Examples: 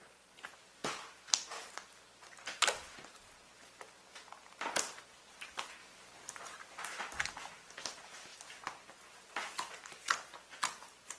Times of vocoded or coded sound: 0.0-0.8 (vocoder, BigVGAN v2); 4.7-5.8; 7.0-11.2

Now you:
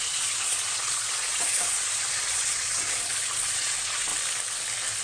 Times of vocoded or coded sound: 0.0-4.1 (vocoder, Vocos)

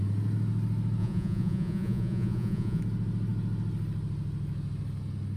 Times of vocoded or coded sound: 1.0-2.8 (vocoder, Vocos)

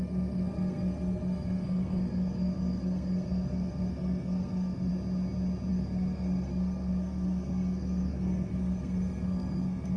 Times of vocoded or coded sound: 0.0-4.9 (codec, SNAC); 5.7-10.0